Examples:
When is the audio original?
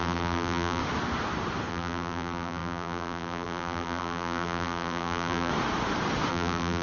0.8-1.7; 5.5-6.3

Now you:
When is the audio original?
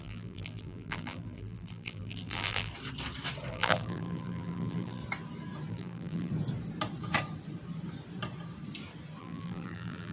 2.7-3.5; 5.0-5.7; 6.3-9.2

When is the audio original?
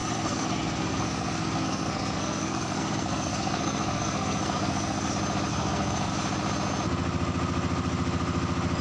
5.1-5.5; 6.1-8.8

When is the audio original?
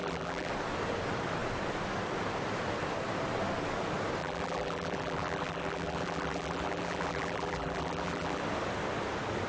0.5-4.2; 8.4-9.5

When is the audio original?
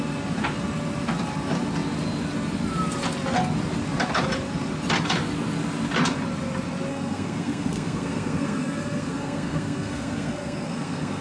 0.0-6.9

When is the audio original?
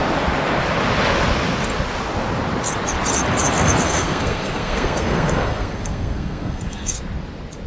0.0-3.9; 7.0-7.7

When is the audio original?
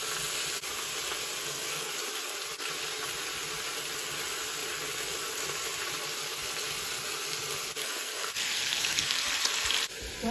0.0-1.4; 1.9-7.8; 9.3-10.3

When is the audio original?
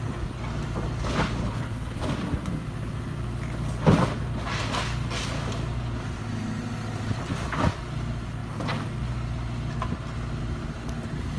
0.0-1.4; 2.0-11.4